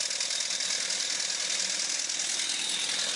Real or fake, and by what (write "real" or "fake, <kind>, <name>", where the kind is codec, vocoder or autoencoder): real